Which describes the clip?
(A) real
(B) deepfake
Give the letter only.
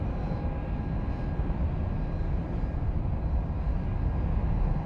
A